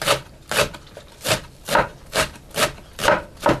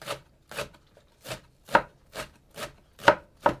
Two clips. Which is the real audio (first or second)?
second